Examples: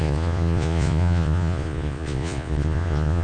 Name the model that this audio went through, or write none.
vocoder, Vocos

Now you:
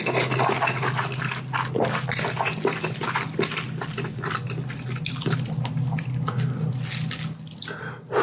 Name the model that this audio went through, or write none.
none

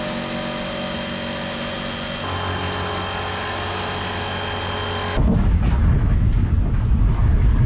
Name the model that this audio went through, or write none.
none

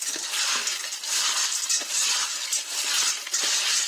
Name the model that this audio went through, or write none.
none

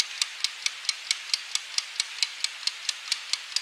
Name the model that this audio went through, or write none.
none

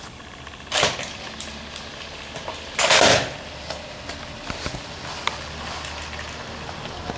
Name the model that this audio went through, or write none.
none